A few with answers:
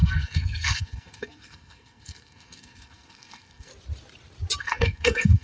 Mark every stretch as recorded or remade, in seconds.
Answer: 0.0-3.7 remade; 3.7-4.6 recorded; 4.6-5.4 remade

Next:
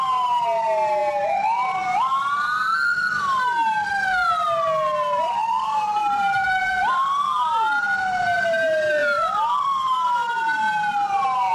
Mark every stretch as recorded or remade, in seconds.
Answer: 0.0-11.5 recorded

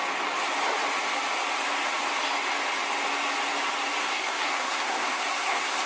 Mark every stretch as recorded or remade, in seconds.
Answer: 0.0-4.0 recorded; 4.0-5.9 remade

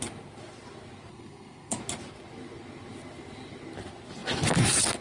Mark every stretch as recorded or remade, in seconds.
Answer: 0.0-1.1 recorded; 1.1-1.8 remade; 1.8-5.0 recorded

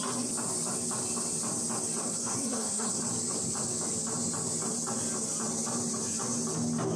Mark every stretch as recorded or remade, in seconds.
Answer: 0.0-2.0 recorded; 2.0-3.0 remade; 3.0-7.0 recorded

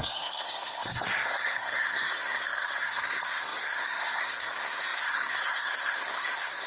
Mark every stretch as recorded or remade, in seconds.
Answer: 0.0-6.7 remade

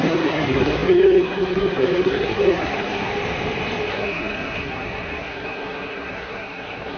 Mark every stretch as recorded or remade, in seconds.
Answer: 0.0-3.1 remade; 3.1-3.9 recorded; 3.9-7.0 remade